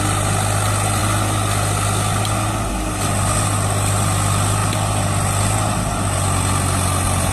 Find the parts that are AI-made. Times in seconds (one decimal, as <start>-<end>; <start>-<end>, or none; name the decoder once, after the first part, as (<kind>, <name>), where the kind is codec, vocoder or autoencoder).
none